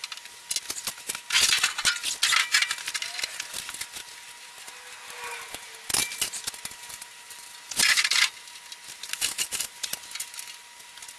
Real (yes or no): yes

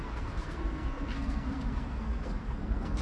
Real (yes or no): no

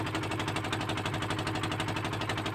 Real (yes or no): yes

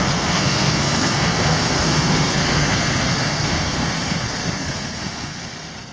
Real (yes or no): no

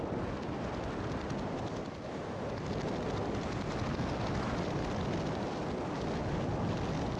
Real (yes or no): yes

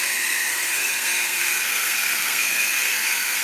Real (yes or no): no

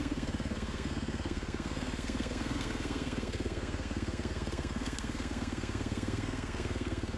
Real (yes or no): no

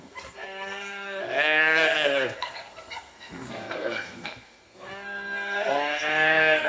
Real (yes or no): no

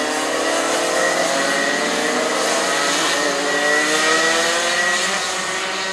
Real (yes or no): yes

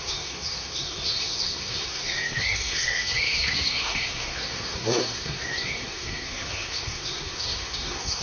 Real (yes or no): no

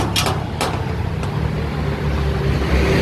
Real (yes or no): yes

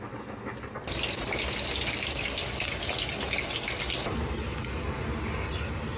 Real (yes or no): yes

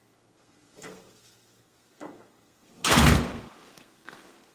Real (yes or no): no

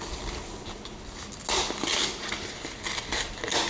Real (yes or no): yes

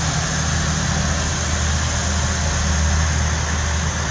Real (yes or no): yes